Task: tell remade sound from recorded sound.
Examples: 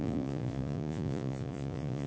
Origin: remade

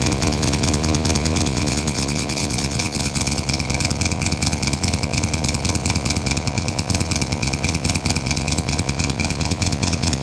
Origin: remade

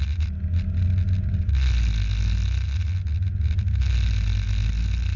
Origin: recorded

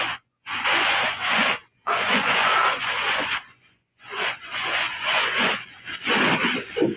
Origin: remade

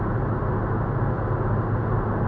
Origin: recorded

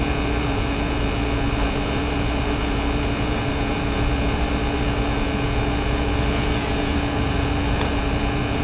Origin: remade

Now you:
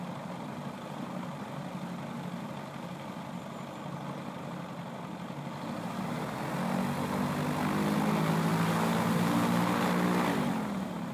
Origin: recorded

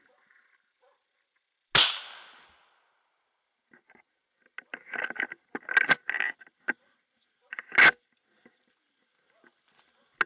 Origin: recorded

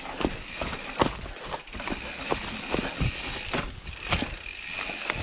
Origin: recorded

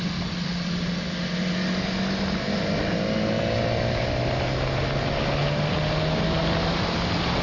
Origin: recorded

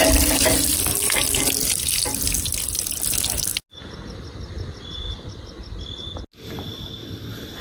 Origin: recorded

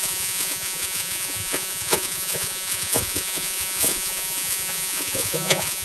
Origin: remade